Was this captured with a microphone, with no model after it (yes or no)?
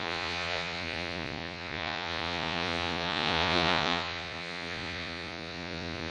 no